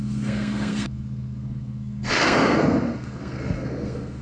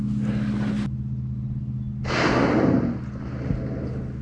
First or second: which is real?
second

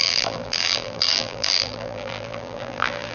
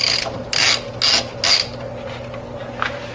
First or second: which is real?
second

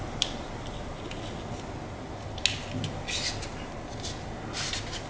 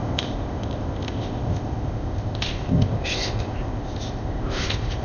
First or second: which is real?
first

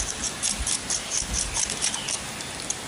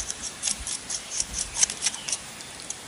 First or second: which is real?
first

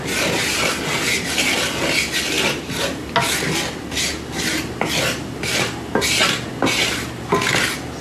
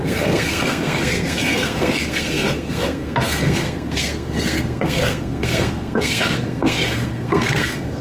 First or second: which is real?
first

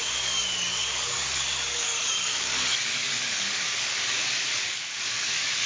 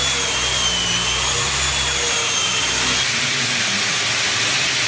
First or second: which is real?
second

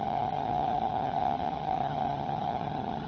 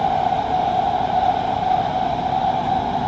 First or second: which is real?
second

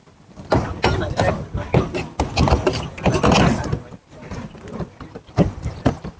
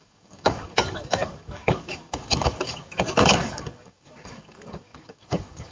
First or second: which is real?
first